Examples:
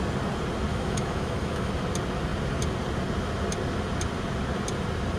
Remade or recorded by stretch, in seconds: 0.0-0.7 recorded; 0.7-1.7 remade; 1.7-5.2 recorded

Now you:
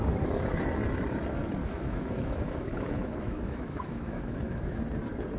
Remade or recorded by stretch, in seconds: 0.0-1.6 recorded; 1.6-4.8 remade; 4.8-5.4 recorded

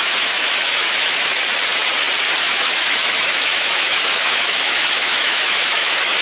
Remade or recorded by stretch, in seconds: 0.0-1.4 remade; 1.4-2.4 recorded; 2.4-6.2 remade

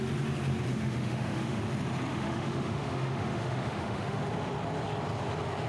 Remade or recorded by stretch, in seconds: 0.0-0.7 recorded; 0.7-1.6 remade; 1.6-2.1 recorded; 2.1-4.2 remade; 4.2-5.7 recorded

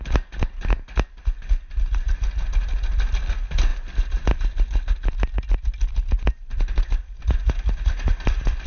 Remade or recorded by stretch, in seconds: 0.0-8.7 recorded

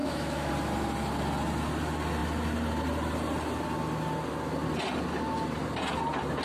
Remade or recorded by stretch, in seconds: 0.0-0.5 remade; 0.5-6.4 recorded

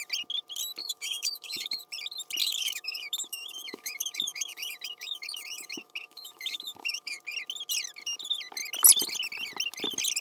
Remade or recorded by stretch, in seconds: 0.0-0.8 recorded; 0.8-1.8 remade; 1.8-2.4 recorded; 2.4-7.2 remade; 7.2-10.2 recorded

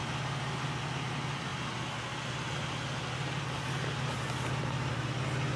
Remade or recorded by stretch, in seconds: 0.0-5.6 recorded